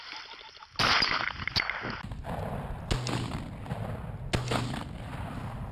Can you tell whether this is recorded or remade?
recorded